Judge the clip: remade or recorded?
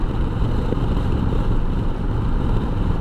remade